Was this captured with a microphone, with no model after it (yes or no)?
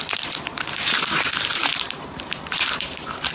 no